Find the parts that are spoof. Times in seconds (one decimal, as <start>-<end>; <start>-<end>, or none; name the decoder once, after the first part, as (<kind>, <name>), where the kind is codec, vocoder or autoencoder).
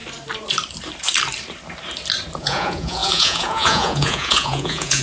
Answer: 2.4-5.0 (vocoder, Vocos)